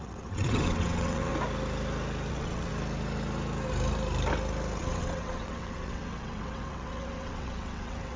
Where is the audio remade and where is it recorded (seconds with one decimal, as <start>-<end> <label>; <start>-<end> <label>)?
0.0-1.3 remade; 1.3-2.3 recorded; 2.3-2.7 remade; 2.7-4.8 recorded; 4.8-8.2 remade